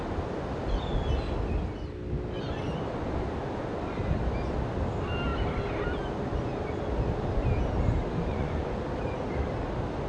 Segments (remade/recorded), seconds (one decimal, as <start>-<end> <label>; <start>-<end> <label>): 0.0-8.3 recorded; 8.3-8.8 remade; 8.8-10.1 recorded